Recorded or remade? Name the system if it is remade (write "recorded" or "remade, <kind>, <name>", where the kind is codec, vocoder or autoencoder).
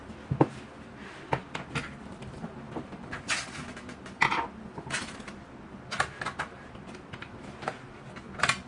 recorded